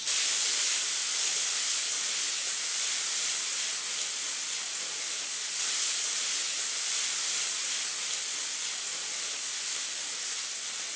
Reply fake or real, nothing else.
real